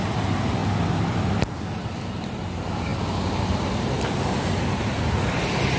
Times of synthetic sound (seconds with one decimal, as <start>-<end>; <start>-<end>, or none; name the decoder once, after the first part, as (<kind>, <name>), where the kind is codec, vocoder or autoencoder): none